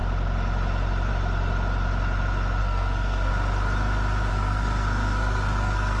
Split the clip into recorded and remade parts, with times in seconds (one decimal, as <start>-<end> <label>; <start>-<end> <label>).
0.0-2.6 recorded; 2.6-3.3 remade; 3.3-4.3 recorded; 4.3-6.0 remade